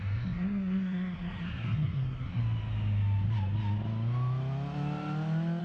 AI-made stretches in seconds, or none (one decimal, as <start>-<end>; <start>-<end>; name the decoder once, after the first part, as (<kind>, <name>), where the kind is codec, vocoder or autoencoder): 0.0-2.4 (codec, SNAC)